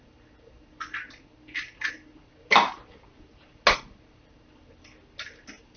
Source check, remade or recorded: recorded